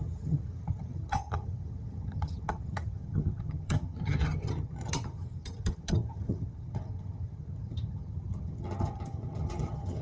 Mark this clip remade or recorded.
remade